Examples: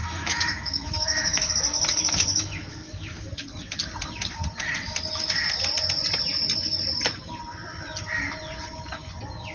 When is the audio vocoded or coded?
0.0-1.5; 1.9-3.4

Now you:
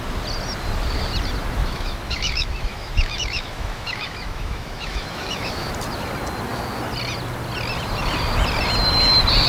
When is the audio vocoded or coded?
1.6-5.7